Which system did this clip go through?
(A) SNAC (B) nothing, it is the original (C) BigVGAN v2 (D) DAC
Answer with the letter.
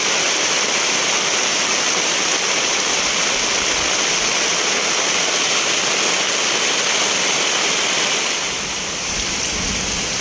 B